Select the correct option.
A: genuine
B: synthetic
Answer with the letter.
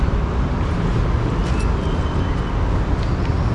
A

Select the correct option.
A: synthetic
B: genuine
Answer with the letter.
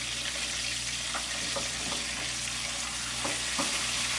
B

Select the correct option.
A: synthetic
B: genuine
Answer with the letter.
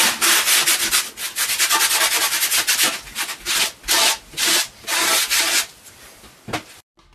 B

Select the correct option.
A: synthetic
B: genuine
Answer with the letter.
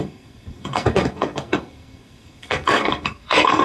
A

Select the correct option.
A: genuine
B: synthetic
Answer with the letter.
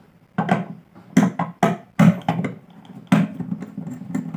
A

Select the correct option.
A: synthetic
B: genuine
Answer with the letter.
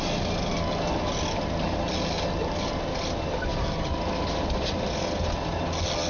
B